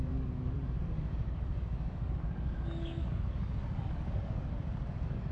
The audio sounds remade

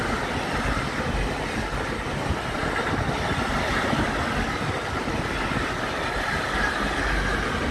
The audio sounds recorded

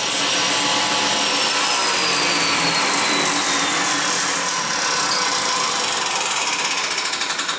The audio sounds recorded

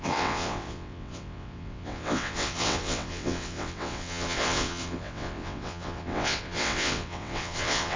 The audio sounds remade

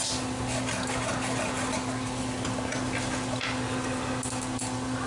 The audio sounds recorded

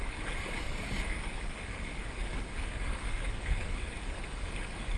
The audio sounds remade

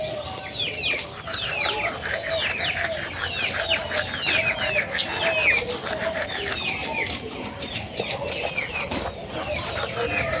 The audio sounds recorded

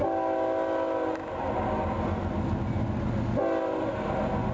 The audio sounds recorded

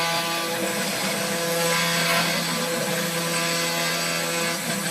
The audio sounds remade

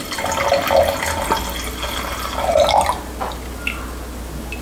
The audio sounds recorded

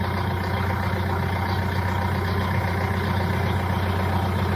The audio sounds recorded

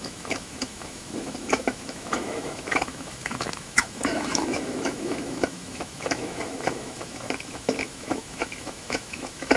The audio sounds remade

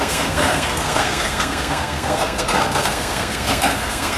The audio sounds remade